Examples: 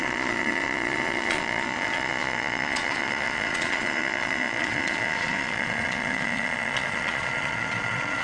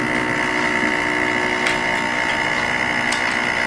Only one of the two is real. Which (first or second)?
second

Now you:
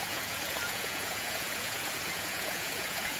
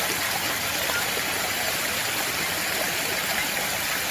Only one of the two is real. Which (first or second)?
second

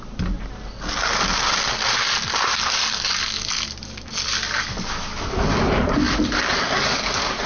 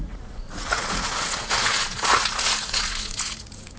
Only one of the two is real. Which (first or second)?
first